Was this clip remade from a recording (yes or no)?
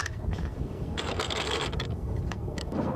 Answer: yes